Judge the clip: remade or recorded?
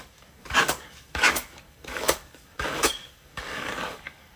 remade